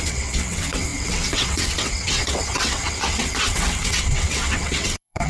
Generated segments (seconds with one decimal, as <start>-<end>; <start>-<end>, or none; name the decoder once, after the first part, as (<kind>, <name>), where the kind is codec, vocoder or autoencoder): 0.0-5.3 (vocoder, WaveNeXt)